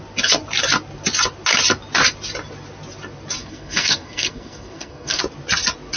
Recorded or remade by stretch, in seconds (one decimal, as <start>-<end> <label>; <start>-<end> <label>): 0.0-3.4 recorded; 3.4-5.2 remade; 5.2-6.0 recorded